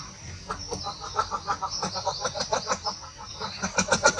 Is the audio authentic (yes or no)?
yes